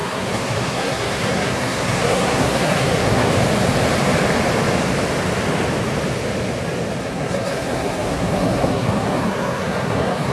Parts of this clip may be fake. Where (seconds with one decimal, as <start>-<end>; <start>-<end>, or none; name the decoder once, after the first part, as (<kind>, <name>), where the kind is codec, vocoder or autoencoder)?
0.0-3.3 (codec, SNAC); 7.0-10.3

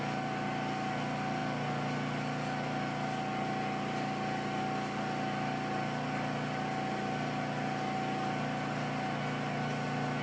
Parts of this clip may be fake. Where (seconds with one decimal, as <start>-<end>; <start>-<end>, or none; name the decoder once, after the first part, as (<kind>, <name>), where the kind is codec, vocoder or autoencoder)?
none